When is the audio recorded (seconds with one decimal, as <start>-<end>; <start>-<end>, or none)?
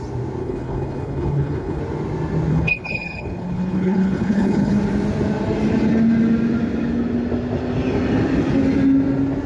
0.0-0.4; 1.8-2.5; 4.8-9.5